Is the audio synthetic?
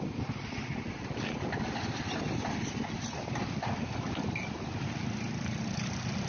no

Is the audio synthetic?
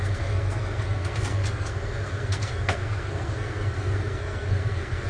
yes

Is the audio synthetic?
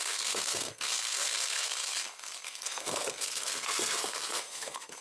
yes